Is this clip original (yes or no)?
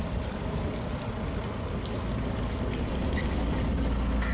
yes